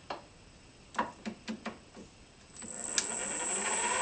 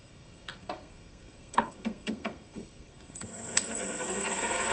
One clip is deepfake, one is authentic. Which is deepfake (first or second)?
second